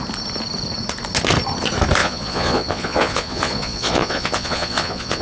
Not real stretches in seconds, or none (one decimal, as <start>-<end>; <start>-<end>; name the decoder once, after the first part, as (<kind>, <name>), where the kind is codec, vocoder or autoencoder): 2.0-5.2 (vocoder, Vocos)